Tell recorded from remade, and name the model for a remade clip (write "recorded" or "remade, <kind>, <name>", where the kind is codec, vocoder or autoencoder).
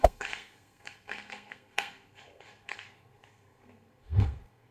remade, codec, SNAC